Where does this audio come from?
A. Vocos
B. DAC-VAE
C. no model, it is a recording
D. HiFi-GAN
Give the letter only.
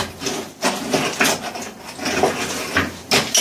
C